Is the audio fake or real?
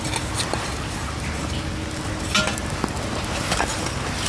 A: real